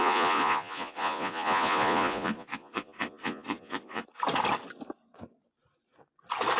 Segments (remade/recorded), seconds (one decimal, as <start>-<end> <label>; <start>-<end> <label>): 0.0-4.0 remade; 4.0-6.6 recorded